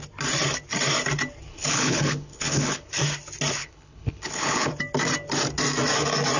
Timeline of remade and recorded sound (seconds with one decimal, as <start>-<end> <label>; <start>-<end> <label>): 0.0-1.5 recorded; 1.5-2.9 remade; 2.9-3.6 recorded; 3.6-4.7 remade; 4.7-6.4 recorded